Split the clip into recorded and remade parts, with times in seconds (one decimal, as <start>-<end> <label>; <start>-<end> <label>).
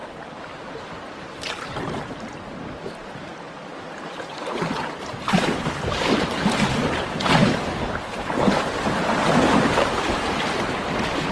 0.0-1.5 remade; 1.5-11.3 recorded